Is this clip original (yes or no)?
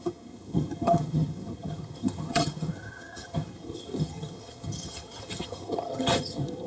no